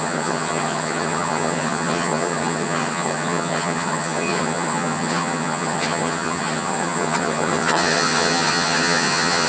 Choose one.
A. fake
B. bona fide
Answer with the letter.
A